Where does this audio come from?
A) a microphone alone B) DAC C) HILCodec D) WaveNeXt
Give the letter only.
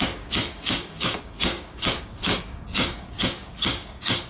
B